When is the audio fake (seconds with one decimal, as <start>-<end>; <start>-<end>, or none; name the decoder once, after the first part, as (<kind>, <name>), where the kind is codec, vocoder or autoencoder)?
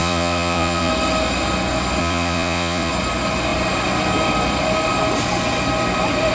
0.0-0.9 (vocoder, Vocos); 2.0-2.9